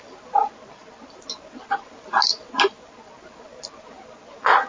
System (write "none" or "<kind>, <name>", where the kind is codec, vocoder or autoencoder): none